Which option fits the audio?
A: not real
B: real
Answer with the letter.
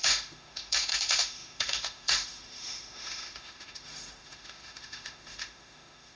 A